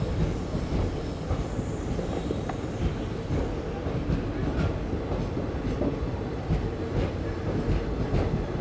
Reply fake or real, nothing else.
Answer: real